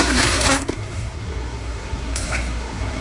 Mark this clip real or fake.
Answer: fake